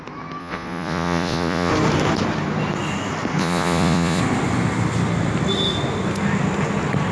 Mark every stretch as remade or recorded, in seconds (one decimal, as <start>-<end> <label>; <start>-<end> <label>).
0.0-0.4 recorded; 0.4-1.7 remade; 1.7-3.4 recorded; 3.4-4.2 remade; 4.2-7.1 recorded